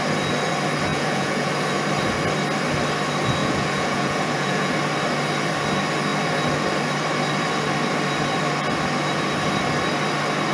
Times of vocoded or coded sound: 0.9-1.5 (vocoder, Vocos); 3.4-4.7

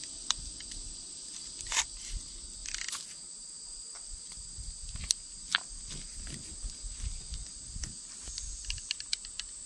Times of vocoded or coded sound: none

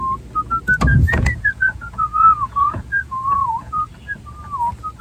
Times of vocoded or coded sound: 0.9-3.9 (vocoder, Vocos)